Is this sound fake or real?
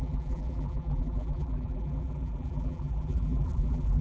fake